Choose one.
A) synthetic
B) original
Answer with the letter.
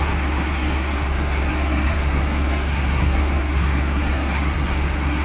A